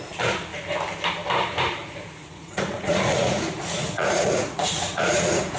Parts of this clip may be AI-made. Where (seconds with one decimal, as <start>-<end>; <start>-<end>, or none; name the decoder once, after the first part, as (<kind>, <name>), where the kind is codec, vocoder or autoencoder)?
1.8-5.6 (vocoder, Vocos)

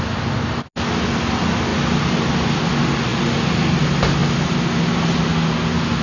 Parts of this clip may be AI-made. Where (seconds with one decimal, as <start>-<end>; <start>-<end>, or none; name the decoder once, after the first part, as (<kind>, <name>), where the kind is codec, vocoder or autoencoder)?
none

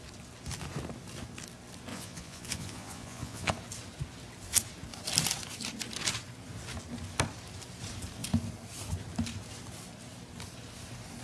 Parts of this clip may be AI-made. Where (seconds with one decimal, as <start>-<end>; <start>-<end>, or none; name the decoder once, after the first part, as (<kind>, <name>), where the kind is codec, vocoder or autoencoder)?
1.9-3.5 (vocoder, Vocos)

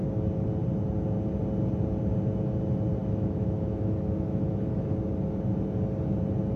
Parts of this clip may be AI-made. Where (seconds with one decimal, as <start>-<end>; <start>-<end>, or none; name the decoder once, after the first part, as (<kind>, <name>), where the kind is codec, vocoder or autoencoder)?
3.0-4.8 (autoencoder, DAC-VAE)

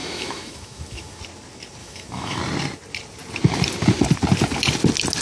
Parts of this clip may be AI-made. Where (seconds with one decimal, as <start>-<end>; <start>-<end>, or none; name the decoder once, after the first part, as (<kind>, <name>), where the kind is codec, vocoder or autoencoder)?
0.0-1.2 (autoencoder, DAC-VAE); 1.8-2.4

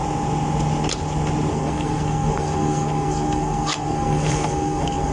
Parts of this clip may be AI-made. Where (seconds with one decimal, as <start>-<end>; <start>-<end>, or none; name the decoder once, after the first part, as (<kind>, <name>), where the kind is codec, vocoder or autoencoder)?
1.5-5.1 (codec, SNAC)

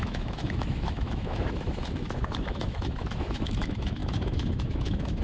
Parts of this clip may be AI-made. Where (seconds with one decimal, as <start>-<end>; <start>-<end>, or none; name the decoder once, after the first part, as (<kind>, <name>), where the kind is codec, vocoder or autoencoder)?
0.0-5.2 (autoencoder, DAC-VAE)

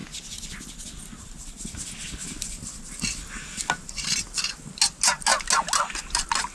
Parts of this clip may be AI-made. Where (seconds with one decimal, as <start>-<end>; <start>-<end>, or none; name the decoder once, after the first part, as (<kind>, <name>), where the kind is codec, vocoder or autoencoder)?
none